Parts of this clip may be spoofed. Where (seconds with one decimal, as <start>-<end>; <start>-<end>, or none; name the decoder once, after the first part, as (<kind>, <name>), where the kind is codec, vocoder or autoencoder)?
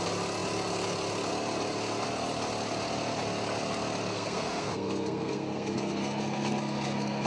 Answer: 4.1-7.3 (codec, SNAC)